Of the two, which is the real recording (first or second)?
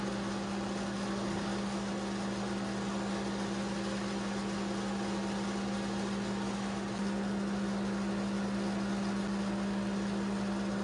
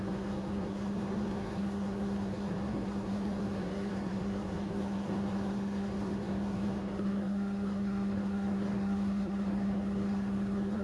first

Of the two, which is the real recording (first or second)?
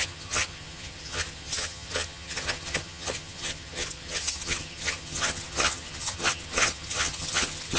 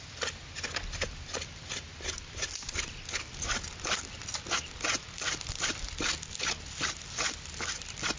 second